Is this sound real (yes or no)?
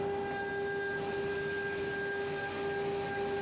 yes